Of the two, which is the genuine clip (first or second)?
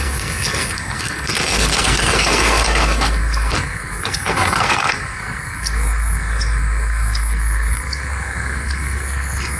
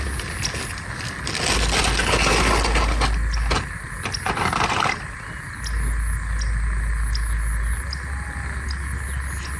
second